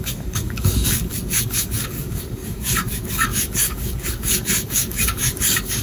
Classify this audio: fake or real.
fake